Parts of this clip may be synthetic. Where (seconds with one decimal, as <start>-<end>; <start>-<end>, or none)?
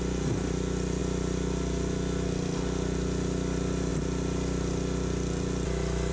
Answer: none